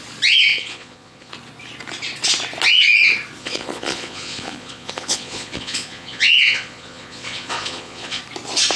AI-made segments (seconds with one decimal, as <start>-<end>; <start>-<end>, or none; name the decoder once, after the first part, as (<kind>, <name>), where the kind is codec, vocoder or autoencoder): 0.5-1.3 (vocoder, Vocos); 3.4-8.2